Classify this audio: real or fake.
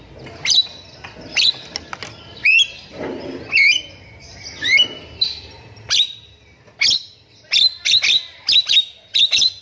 real